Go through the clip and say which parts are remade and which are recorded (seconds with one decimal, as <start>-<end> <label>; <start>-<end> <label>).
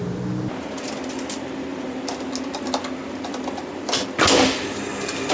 0.0-5.3 recorded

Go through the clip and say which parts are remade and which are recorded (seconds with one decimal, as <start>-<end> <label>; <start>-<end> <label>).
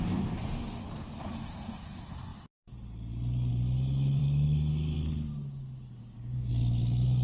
0.0-6.0 recorded; 6.0-6.5 remade; 6.5-7.2 recorded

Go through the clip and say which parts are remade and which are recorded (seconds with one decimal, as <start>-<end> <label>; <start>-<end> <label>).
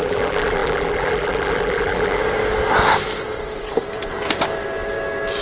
0.0-2.2 remade; 2.2-5.4 recorded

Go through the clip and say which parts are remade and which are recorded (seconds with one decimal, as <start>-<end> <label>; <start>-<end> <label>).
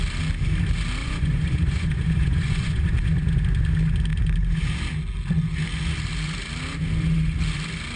0.0-1.0 recorded; 1.0-3.4 remade; 3.4-8.0 recorded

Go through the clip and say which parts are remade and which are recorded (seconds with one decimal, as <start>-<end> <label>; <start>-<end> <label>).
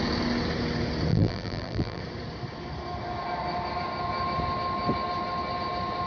0.0-1.1 recorded; 1.1-2.0 remade; 2.0-6.1 recorded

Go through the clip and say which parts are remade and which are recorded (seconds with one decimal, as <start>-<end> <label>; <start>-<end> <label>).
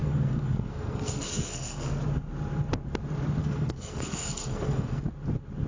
0.0-2.0 remade; 2.0-3.4 recorded; 3.4-5.0 remade; 5.0-5.7 recorded